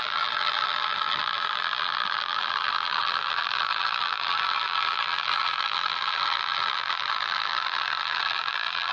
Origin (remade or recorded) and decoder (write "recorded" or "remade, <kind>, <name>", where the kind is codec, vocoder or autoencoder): remade, vocoder, BigVGAN v2